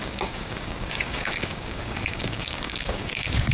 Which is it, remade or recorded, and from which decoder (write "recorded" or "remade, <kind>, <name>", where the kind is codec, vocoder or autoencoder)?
remade, codec, DAC